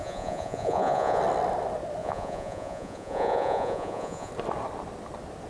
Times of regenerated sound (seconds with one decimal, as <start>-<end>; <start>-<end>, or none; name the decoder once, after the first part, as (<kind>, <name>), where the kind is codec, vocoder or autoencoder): 0.0-1.2 (vocoder, Vocos); 2.0-4.3